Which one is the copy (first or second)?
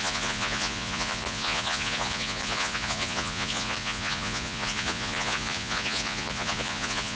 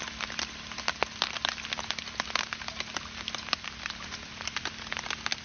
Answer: first